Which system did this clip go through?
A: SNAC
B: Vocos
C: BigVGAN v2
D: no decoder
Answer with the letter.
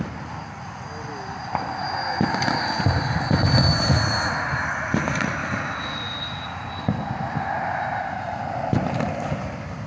D